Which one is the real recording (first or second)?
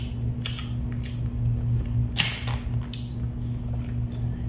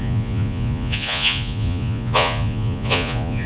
first